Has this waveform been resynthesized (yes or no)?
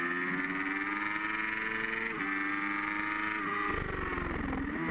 no